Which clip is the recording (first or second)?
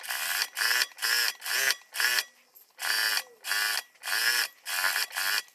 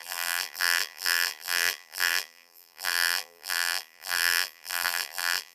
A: first